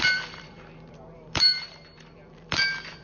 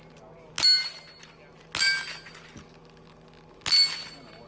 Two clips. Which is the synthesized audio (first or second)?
first